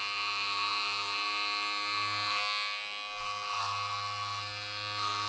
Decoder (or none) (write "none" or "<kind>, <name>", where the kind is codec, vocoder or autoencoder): none